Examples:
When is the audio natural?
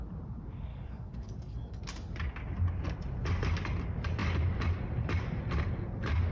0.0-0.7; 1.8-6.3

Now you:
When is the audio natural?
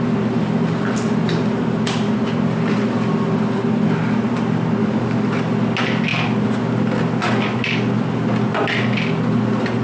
0.0-4.8; 5.3-9.8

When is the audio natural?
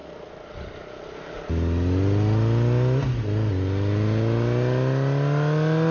0.0-5.9